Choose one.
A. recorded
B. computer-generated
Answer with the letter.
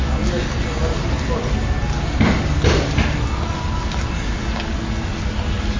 A